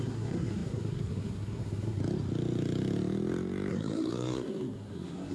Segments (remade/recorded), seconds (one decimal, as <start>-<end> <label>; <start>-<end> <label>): 0.0-2.0 remade; 2.0-3.7 recorded; 3.7-5.3 remade